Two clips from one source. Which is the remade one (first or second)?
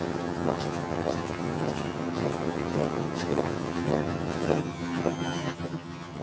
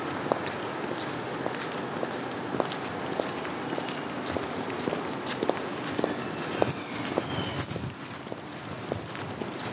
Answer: first